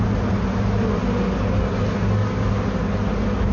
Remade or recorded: recorded